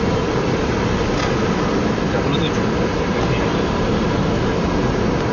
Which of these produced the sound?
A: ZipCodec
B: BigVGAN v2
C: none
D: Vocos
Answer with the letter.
C